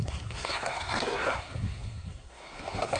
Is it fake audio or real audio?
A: fake